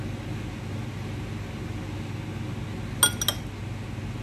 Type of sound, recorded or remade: recorded